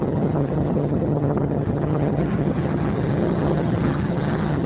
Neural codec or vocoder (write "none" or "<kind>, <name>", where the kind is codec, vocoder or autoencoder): vocoder, HiFi-GAN